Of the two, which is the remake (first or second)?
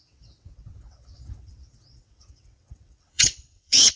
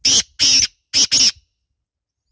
first